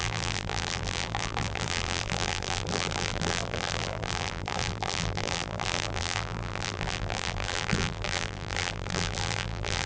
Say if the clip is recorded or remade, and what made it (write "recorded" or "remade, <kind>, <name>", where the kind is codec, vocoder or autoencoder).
remade, vocoder, BigVGAN v2